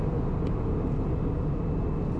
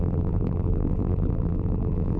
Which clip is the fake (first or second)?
second